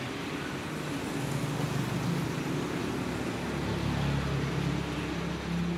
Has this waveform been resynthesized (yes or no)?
no